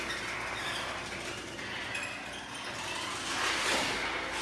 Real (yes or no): yes